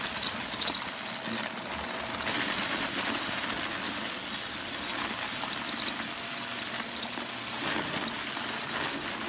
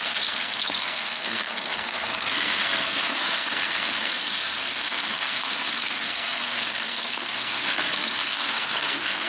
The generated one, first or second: second